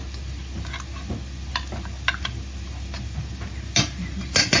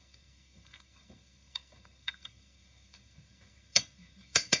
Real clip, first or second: first